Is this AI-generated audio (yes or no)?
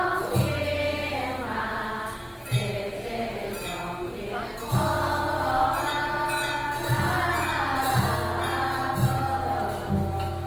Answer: no